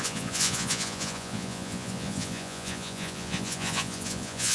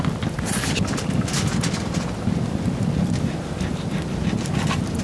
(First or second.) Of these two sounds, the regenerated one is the first